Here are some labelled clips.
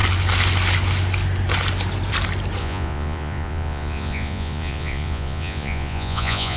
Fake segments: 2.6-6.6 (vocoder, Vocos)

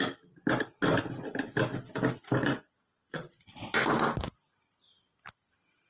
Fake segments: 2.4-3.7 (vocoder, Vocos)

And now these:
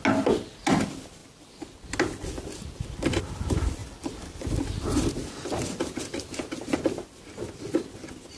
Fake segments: 3.8-4.6 (vocoder, BigVGAN v2)

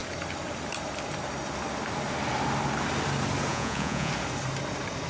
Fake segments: 3.5-4.1 (vocoder, Vocos)